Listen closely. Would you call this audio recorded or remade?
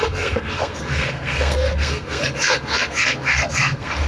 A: remade